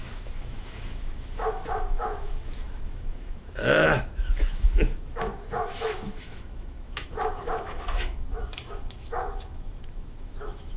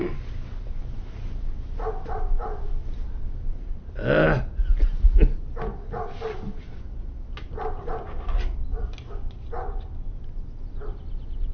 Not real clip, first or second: first